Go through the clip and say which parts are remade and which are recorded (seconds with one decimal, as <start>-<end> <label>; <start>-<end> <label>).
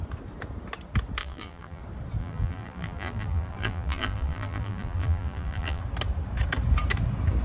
0.0-1.2 recorded; 1.2-1.8 remade; 1.8-2.2 recorded; 2.2-5.8 remade; 5.8-7.4 recorded